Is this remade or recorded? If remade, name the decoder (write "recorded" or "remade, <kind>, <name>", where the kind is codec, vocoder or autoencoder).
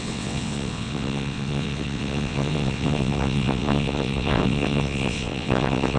remade, vocoder, WaveNeXt